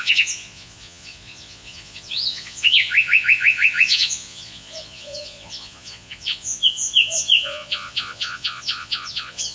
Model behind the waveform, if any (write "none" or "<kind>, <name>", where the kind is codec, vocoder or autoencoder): vocoder, Vocos